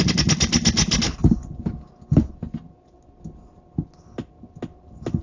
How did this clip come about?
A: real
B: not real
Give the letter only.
A